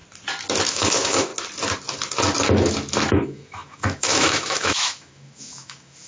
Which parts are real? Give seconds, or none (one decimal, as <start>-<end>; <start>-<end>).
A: 0.0-0.7; 1.3-3.1